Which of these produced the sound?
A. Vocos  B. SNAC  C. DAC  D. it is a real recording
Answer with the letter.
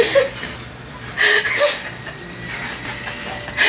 D